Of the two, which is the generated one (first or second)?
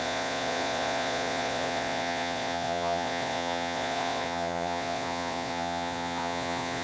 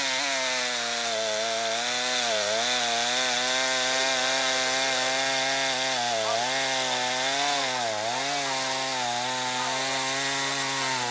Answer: first